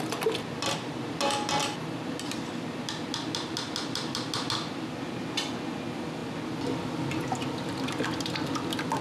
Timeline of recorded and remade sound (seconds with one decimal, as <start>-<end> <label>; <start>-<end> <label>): 0.0-9.0 recorded